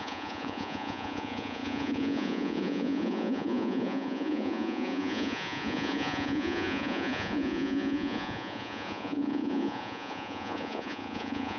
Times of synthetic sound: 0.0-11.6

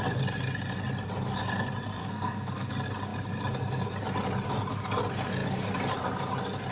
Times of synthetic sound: 2.0-2.7

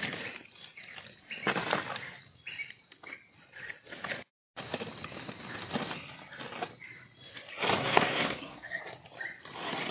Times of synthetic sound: 7.8-8.8